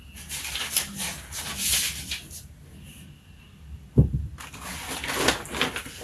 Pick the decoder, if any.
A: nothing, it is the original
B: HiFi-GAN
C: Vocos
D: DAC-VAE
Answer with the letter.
A